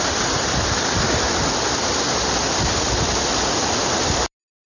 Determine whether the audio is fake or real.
real